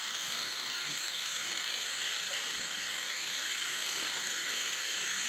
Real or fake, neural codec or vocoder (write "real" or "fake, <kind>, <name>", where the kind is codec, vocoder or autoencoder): fake, codec, DAC